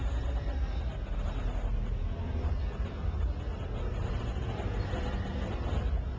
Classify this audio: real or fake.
real